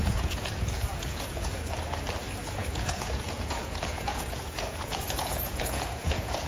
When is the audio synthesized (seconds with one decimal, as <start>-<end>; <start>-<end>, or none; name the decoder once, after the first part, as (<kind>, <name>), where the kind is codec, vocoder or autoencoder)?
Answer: 0.0-1.7 (vocoder, Vocos); 2.6-6.5